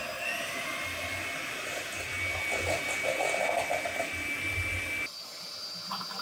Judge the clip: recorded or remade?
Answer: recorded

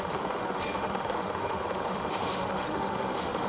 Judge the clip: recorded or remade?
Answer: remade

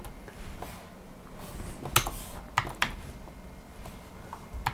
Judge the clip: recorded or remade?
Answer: recorded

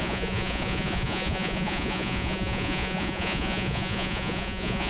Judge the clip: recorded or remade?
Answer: remade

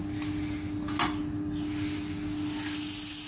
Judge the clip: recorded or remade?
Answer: recorded